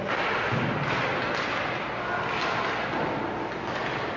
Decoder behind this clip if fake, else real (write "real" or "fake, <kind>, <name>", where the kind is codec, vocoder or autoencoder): real